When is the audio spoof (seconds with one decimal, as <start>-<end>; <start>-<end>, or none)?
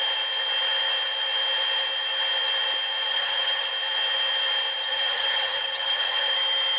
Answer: 3.1-3.7; 4.9-6.3